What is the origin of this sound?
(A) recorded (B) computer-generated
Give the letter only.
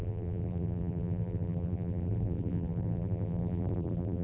B